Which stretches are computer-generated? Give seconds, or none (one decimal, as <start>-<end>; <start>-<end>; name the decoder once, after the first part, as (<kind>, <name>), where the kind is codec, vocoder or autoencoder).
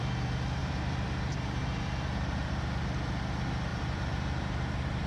0.6-2.6 (vocoder, BigVGAN v2); 3.7-5.1